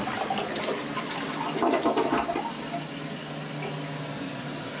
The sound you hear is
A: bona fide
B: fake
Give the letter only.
A